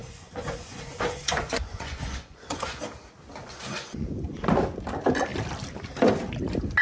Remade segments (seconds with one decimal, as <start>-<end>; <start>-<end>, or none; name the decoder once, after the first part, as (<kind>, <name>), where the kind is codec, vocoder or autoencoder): 0.0-2.8 (vocoder, Vocos); 3.4-4.5